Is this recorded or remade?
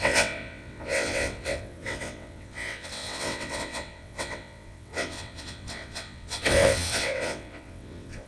remade